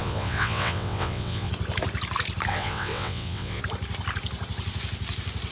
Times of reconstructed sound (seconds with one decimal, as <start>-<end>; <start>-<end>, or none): 0.0-1.5; 2.5-3.6